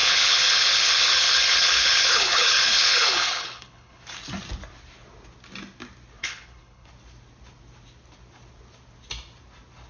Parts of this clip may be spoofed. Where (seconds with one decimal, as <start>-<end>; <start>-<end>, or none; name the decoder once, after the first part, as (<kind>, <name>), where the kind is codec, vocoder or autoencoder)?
0.0-4.0 (codec, HILCodec); 6.2-6.9